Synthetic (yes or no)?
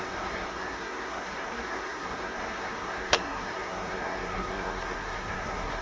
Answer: yes